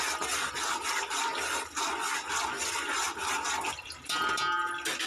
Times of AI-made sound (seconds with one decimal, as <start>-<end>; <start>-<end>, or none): 3.2-4.4